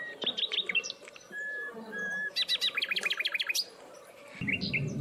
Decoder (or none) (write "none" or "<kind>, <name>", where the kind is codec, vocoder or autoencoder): none